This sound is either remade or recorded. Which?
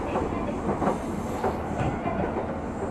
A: recorded